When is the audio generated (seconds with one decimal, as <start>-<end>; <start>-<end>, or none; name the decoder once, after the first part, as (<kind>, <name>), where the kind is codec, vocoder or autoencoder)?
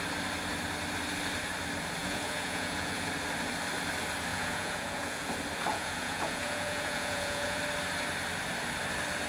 2.0-3.1 (vocoder, Vocos); 4.3-5.3; 5.7-7.6